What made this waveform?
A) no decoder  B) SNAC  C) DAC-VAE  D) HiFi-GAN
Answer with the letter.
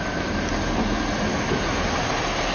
A